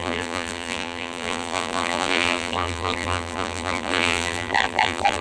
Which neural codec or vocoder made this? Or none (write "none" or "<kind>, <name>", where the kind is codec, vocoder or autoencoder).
vocoder, BigVGAN v2